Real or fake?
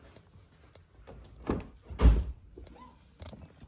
real